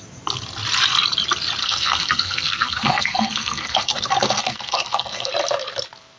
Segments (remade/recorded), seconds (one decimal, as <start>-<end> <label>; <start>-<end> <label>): 0.0-1.6 recorded; 1.6-5.3 remade; 5.3-6.2 recorded

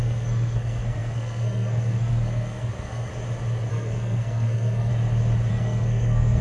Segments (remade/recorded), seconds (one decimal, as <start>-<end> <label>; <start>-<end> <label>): 0.0-3.1 remade; 3.1-3.7 recorded; 3.7-4.9 remade; 4.9-5.5 recorded; 5.5-6.4 remade

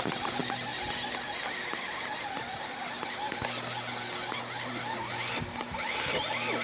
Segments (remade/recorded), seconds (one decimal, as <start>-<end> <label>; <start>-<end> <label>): 0.0-6.6 recorded

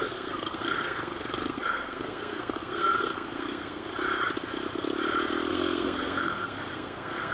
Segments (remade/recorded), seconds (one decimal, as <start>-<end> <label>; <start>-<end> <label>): 0.0-3.9 remade; 3.9-5.5 recorded; 5.5-7.3 remade

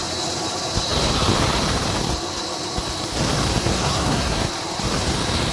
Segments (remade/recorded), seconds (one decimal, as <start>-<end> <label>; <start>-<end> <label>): 0.0-3.6 recorded; 3.6-4.5 remade; 4.5-5.5 recorded